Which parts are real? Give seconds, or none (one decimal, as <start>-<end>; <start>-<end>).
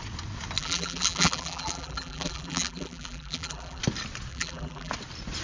0.0-0.6; 3.8-4.3; 4.9-5.4